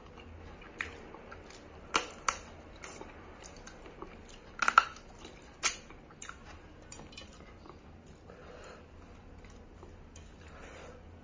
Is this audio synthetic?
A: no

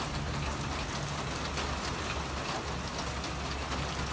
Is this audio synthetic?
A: no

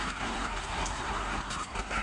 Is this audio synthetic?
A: yes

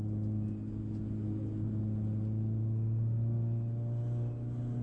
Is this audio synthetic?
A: no